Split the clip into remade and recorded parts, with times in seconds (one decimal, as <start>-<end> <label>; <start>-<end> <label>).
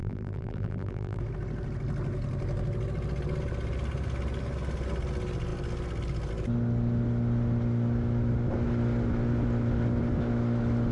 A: 0.0-1.2 remade; 1.2-10.9 recorded